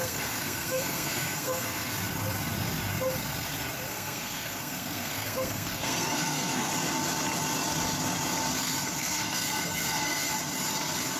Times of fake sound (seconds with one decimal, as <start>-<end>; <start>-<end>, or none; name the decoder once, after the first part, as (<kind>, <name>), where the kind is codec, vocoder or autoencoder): 0.0-1.9 (codec, SNAC); 3.9-6.7; 8.6-10.3